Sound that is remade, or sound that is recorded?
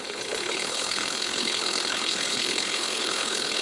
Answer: remade